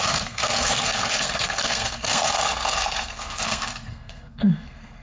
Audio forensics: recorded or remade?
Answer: remade